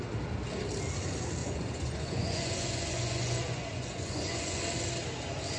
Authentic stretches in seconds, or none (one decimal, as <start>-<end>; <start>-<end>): 0.0-1.4; 4.6-5.6